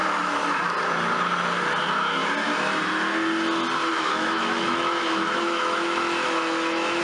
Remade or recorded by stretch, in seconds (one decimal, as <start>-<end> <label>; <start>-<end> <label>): 0.0-3.9 recorded; 3.9-7.0 remade